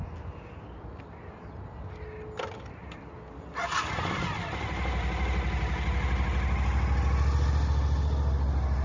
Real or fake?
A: real